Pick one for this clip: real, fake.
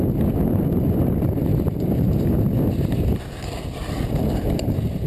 real